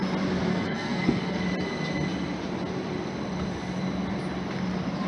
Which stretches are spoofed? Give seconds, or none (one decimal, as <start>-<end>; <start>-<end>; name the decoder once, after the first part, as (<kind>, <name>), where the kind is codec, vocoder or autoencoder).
0.5-1.4 (codec, SNAC)